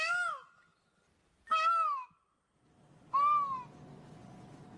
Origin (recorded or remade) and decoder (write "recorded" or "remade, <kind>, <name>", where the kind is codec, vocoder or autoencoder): recorded